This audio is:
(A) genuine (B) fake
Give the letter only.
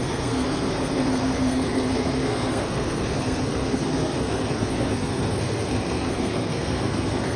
B